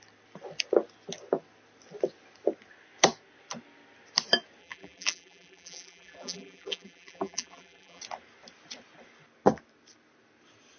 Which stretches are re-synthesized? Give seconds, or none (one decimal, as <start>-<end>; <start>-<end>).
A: 4.6-8.0